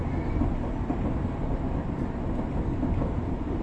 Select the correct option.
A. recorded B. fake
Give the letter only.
A